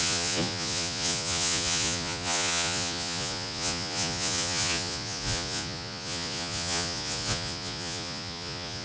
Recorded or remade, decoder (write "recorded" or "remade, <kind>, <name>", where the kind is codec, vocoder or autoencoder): remade, vocoder, Vocos